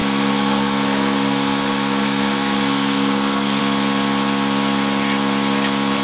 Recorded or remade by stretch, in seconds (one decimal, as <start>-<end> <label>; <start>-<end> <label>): 0.0-3.6 remade; 3.6-6.0 recorded